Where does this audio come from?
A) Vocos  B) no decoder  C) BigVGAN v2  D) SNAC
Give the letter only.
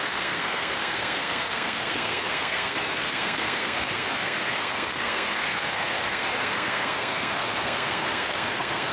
D